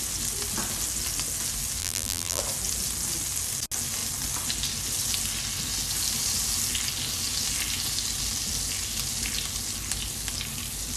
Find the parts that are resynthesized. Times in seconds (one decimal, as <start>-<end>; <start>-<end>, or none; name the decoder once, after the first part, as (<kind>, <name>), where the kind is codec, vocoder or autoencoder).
1.8-2.4 (vocoder, BigVGAN v2)